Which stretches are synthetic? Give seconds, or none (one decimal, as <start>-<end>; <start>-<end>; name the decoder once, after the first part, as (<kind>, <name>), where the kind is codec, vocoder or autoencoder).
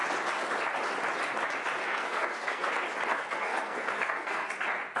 1.8-2.7 (codec, SNAC); 3.1-4.5